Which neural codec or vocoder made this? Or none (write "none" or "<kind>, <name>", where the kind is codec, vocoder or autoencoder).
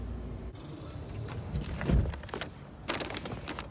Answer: none